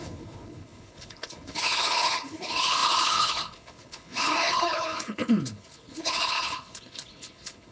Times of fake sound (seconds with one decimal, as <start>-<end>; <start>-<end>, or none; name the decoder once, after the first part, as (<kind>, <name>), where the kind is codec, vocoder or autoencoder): 0.0-7.7 (codec, HILCodec)